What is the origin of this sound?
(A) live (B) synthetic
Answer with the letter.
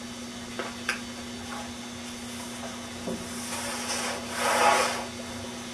A